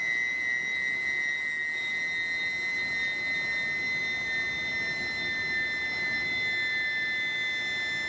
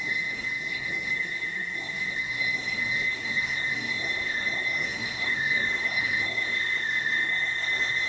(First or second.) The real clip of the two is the first